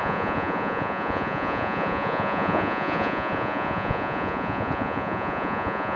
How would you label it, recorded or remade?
remade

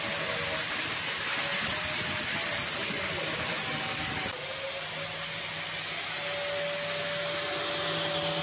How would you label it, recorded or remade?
recorded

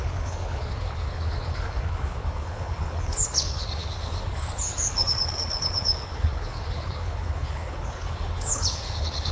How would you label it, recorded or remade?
remade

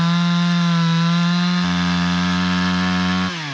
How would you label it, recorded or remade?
recorded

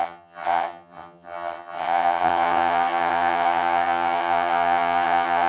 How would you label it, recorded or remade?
remade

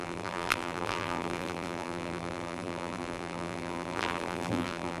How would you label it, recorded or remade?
remade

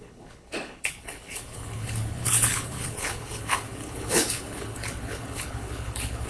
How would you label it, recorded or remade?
remade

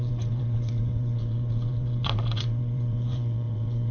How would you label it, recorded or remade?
remade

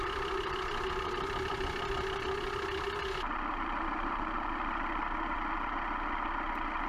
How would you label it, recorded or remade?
recorded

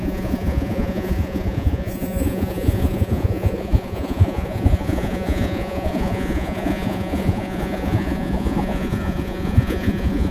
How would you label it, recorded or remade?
remade